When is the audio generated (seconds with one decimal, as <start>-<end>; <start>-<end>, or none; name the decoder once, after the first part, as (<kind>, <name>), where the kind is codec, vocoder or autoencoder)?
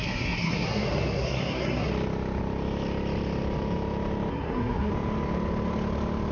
0.0-1.9 (codec, SNAC); 4.3-4.9